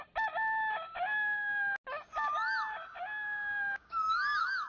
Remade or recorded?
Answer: recorded